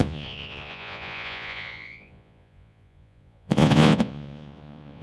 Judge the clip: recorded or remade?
remade